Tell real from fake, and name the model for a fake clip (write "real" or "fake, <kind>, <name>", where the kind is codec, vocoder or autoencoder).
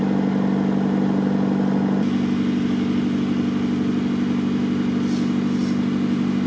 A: real